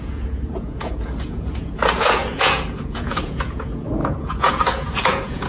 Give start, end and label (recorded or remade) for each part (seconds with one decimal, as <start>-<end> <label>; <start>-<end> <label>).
0.0-5.5 remade